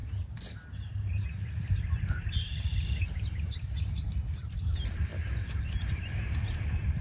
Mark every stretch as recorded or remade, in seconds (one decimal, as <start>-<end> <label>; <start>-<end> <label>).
0.0-1.9 recorded; 1.9-7.0 remade